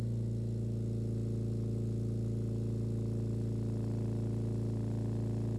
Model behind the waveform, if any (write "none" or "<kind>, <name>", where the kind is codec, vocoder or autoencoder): none